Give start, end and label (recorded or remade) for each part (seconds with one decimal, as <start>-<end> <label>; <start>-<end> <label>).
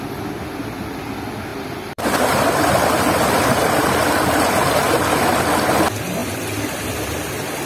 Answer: 0.0-1.5 recorded; 1.5-4.7 remade; 4.7-6.2 recorded; 6.2-6.9 remade; 6.9-7.7 recorded